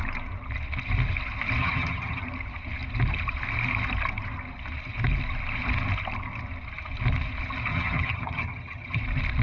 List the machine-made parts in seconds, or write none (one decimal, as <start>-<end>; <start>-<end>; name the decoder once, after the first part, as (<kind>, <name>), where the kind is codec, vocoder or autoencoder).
1.6-2.2 (vocoder, HiFi-GAN); 7.7-9.0